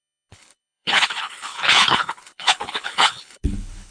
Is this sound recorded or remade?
remade